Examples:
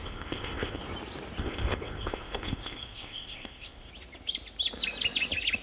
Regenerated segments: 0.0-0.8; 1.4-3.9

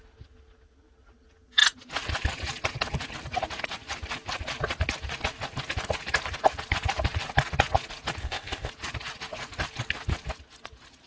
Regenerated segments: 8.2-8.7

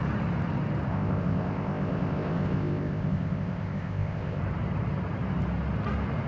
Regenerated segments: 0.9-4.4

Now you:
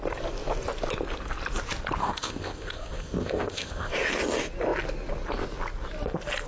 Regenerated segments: 2.0-3.9

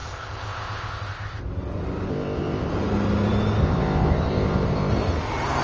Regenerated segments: 0.0-1.4; 2.1-2.7; 3.6-4.9

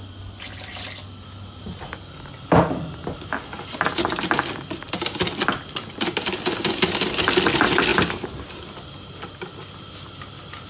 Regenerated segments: none

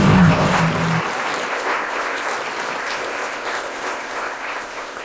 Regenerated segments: 0.0-0.6; 1.5-2.3; 2.8-5.0